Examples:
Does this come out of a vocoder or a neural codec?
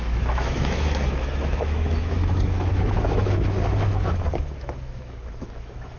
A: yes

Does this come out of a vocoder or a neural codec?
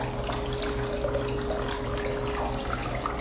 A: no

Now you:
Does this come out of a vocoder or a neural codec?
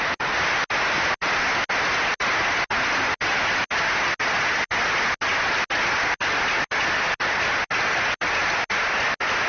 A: no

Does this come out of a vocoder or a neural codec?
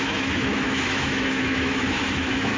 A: yes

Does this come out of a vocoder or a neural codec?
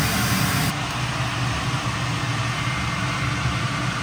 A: no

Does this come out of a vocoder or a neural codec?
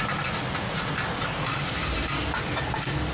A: no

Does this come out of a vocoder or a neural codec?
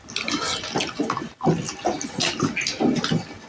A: no